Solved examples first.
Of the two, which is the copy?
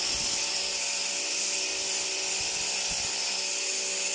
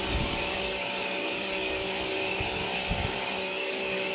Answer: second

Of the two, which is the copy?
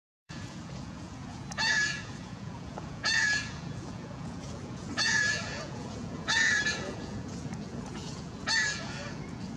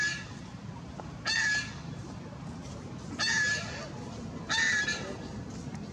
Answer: first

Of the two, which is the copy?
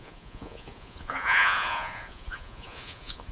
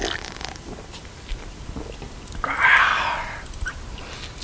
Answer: first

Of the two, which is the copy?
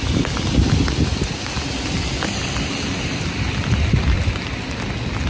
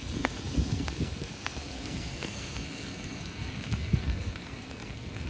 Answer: second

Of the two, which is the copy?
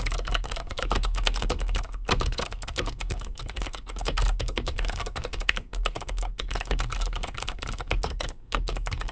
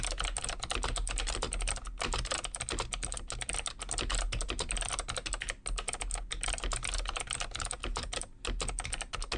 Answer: first